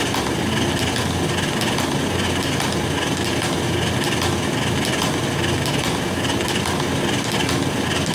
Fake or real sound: real